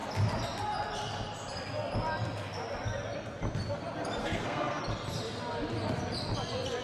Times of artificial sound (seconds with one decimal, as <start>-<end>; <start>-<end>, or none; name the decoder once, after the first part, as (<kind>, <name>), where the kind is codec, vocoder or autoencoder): 4.2-4.8 (codec, SNAC)